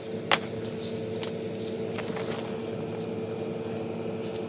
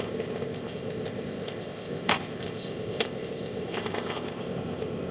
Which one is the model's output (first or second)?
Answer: second